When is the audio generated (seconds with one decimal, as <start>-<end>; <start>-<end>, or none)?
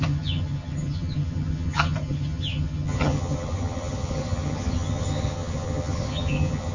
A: 0.0-6.7